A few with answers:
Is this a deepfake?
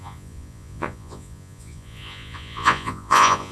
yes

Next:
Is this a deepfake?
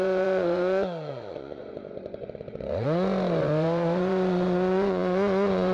yes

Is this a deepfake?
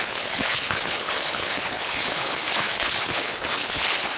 yes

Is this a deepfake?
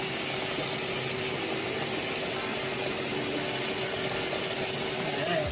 no